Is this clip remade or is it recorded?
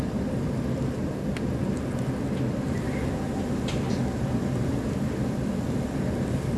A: recorded